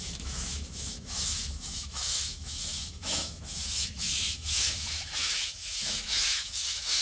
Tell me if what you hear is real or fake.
fake